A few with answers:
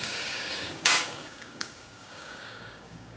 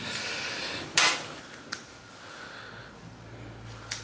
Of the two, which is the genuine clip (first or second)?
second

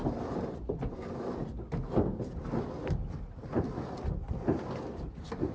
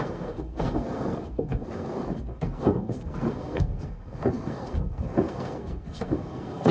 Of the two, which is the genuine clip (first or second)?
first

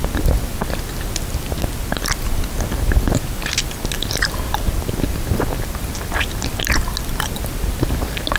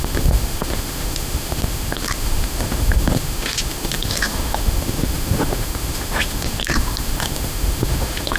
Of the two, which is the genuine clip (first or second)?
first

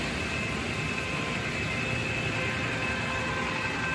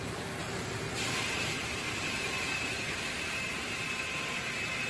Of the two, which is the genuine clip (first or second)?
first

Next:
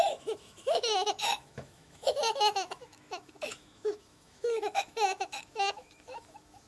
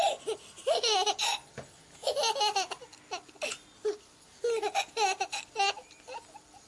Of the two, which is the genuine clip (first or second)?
second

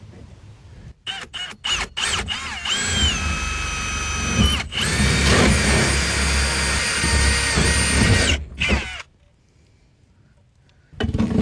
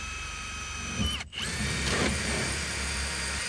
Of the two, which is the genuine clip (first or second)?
first